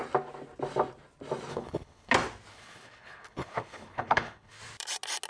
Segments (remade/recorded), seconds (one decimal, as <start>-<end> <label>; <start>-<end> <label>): 0.0-1.5 recorded; 1.5-2.1 remade; 2.1-2.5 recorded; 2.5-4.6 remade; 4.6-5.3 recorded